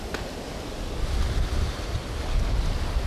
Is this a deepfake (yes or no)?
no